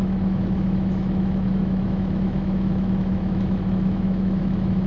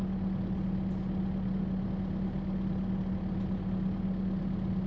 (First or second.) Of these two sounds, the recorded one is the second